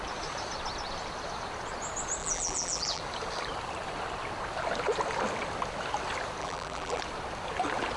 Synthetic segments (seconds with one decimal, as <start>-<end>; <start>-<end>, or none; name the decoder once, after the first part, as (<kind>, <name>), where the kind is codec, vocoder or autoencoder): 2.2-3.0 (vocoder, BigVGAN v2); 6.4-7.0